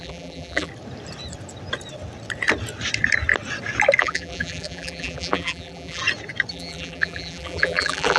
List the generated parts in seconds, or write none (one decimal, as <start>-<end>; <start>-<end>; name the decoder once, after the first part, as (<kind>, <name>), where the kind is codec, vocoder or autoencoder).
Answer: 0.0-0.7 (vocoder, BigVGAN v2); 4.0-6.0; 6.5-8.2